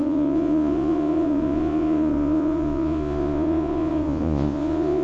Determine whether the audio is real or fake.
fake